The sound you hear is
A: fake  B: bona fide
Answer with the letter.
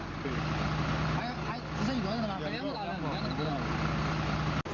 B